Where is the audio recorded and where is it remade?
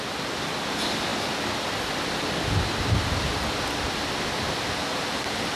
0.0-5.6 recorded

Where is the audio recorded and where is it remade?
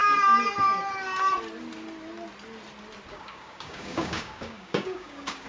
0.0-3.1 recorded; 3.1-5.5 remade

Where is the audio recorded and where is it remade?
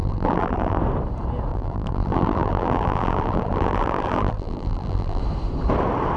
0.0-0.8 remade; 0.8-1.5 recorded; 1.5-5.2 remade; 5.2-6.2 recorded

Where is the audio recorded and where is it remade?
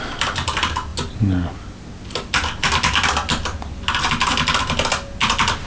0.0-5.7 recorded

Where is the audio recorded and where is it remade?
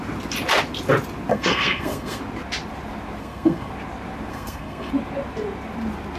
0.0-1.3 recorded; 1.3-2.2 remade; 2.2-3.2 recorded; 3.2-3.7 remade; 3.7-4.3 recorded; 4.3-4.9 remade; 4.9-6.2 recorded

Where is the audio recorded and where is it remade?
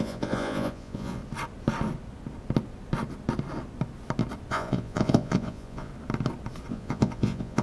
0.0-1.2 remade; 1.2-4.5 recorded; 4.5-5.9 remade; 5.9-6.7 recorded; 6.7-7.6 remade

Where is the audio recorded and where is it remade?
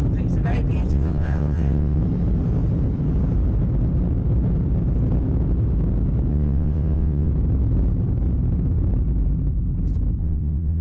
0.0-0.9 recorded; 0.9-2.0 remade; 2.0-6.3 recorded; 6.3-7.3 remade; 7.3-10.2 recorded; 10.2-10.8 remade